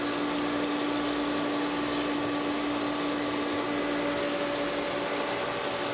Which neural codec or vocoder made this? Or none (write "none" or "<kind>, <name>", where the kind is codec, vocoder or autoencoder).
none